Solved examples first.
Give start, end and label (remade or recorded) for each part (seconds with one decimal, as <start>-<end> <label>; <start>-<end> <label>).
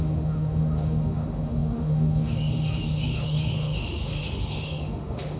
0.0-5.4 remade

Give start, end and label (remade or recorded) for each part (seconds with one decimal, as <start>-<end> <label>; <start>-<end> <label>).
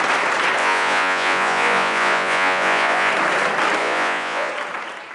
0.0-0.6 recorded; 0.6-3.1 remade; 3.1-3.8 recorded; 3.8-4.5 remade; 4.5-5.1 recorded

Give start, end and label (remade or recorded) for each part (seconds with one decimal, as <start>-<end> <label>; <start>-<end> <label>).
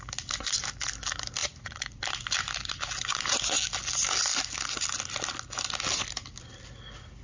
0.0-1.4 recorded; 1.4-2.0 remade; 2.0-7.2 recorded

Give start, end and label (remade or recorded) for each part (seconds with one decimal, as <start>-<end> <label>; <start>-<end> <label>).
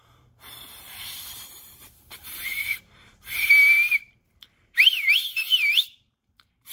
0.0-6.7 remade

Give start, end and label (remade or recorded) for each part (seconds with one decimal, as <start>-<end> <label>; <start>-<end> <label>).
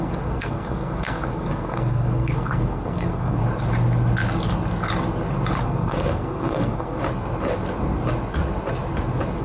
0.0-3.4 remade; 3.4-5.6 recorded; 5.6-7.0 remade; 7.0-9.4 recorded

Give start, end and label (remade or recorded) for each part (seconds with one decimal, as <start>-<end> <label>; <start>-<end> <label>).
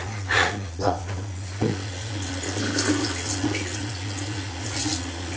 0.0-2.6 remade; 2.6-3.0 recorded; 3.0-5.4 remade